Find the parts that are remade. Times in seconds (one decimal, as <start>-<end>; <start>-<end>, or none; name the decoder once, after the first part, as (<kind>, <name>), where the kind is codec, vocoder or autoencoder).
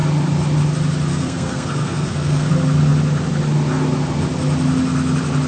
1.1-2.5 (codec, SNAC)